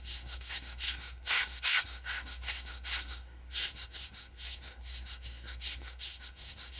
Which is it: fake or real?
fake